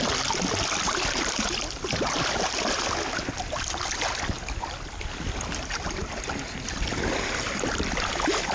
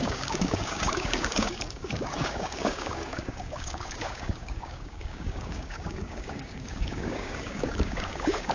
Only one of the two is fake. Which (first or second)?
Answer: second